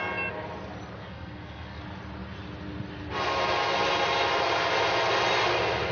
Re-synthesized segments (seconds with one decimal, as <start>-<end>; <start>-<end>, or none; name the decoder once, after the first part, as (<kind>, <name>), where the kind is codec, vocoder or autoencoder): 1.0-1.8 (codec, SNAC)